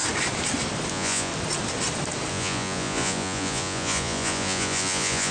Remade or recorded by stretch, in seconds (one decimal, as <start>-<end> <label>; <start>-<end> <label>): 0.0-0.9 recorded; 0.9-1.3 remade; 1.3-2.3 recorded; 2.3-5.3 remade

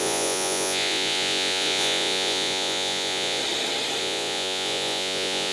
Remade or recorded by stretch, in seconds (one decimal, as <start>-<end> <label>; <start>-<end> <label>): 0.0-3.4 remade; 3.4-4.0 recorded; 4.0-5.5 remade

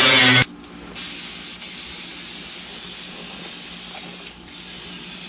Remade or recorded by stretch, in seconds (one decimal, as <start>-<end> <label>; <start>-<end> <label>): 0.0-5.3 recorded

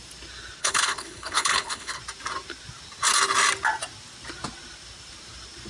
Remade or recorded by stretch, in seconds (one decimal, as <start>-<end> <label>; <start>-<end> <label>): 0.0-0.6 recorded; 0.6-2.0 remade; 2.0-5.7 recorded

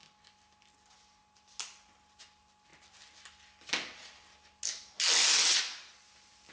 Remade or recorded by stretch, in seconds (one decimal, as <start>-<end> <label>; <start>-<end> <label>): 0.0-6.5 recorded

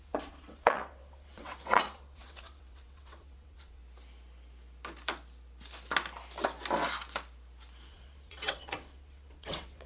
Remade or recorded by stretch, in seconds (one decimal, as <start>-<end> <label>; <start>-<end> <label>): 0.0-3.8 remade; 3.8-7.9 recorded; 7.9-9.9 remade

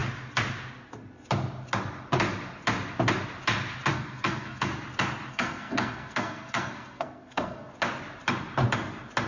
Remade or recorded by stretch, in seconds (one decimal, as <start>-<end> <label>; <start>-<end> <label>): 0.0-3.9 recorded; 3.9-4.7 remade; 4.7-5.3 recorded; 5.3-7.7 remade; 7.7-9.3 recorded

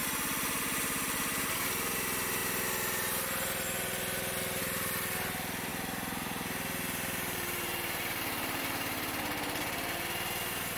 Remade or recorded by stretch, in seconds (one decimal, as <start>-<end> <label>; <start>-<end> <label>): 0.0-5.7 recorded; 5.7-8.6 remade; 8.6-10.8 recorded